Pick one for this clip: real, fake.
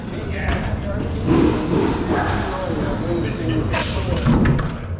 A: real